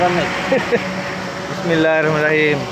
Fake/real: real